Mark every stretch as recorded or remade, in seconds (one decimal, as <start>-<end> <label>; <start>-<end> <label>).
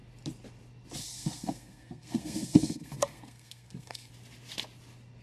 0.0-1.0 recorded; 1.0-4.1 remade; 4.1-5.2 recorded